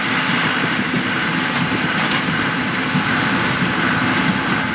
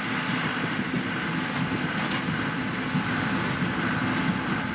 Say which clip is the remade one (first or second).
first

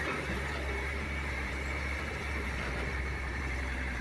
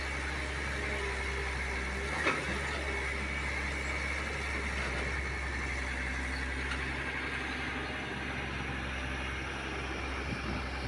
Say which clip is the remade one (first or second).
first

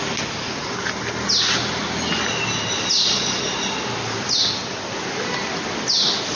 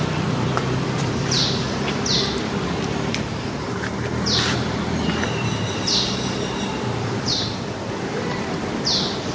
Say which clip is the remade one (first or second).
second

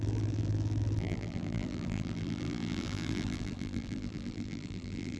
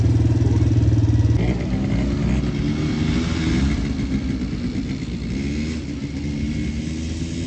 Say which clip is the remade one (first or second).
first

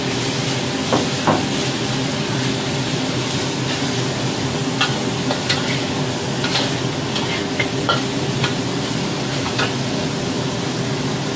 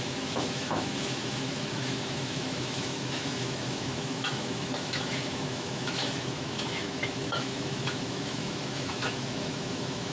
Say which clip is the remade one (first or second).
second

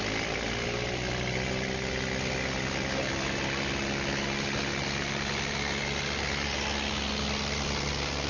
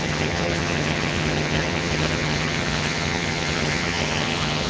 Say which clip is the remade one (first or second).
second